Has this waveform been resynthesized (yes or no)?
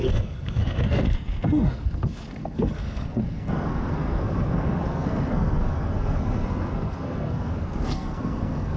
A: yes